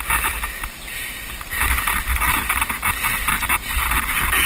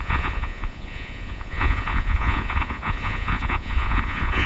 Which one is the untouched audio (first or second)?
first